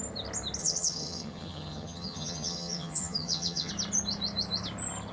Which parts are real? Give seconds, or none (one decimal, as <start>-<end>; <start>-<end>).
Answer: 0.0-0.6; 3.7-5.1